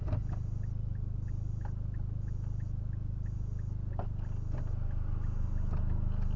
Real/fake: real